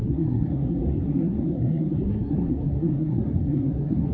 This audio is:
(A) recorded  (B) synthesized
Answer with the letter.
B